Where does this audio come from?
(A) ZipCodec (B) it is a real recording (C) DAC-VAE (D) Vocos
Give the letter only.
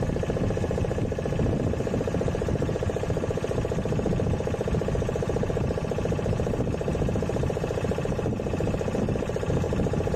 B